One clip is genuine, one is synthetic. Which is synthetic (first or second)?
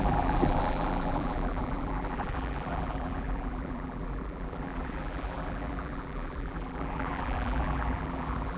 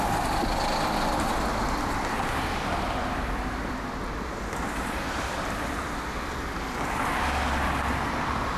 first